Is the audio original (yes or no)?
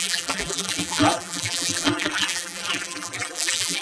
no